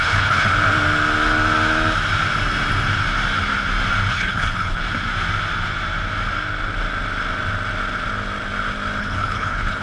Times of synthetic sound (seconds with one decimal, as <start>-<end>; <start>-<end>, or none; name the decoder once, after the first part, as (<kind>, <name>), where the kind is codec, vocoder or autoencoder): 0.0-0.5 (codec, HILCodec); 4.1-4.8; 9.0-9.8